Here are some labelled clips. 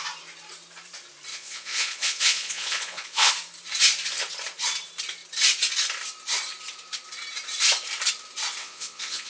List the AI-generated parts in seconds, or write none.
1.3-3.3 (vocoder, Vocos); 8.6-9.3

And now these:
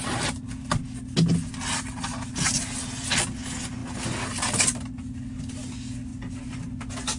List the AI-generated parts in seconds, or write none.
none

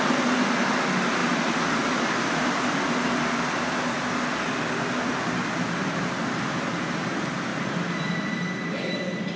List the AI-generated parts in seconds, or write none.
none

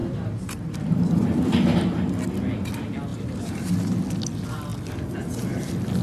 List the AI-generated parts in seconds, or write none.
0.0-1.0 (vocoder, BigVGAN v2); 3.1-3.7

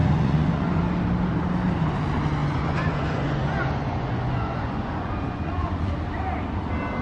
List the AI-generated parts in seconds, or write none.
0.0-0.8 (vocoder, Vocos); 2.4-5.9